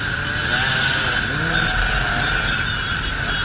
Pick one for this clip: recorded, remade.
recorded